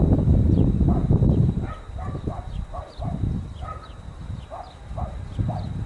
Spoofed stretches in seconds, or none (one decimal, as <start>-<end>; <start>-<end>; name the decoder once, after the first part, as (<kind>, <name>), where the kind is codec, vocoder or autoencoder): none